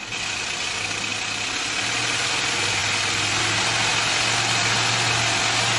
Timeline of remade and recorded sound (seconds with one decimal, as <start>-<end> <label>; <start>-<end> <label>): 0.0-5.8 recorded